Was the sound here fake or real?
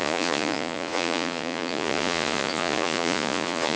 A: fake